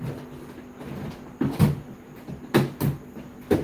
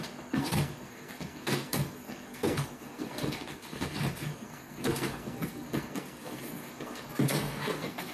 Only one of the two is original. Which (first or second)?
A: first